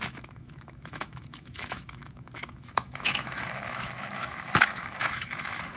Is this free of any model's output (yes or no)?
no